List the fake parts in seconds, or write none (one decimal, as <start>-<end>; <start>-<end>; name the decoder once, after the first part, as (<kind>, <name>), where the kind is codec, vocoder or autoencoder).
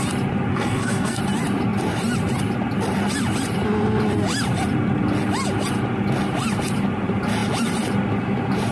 0.5-1.2 (codec, SNAC)